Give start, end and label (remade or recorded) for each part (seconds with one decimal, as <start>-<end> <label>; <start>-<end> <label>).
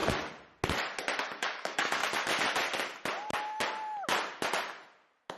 0.0-1.2 recorded; 1.2-2.0 remade; 2.0-5.4 recorded